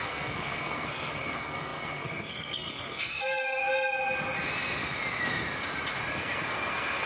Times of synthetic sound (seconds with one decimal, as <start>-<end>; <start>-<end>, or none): 0.0-3.6; 6.2-7.1